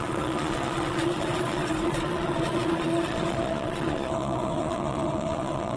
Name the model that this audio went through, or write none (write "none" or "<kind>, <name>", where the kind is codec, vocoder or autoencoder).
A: vocoder, Vocos